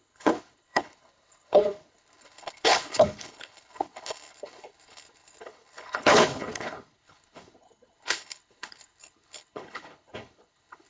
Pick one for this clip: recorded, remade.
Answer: remade